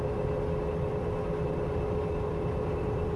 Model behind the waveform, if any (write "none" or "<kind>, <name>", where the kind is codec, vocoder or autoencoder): none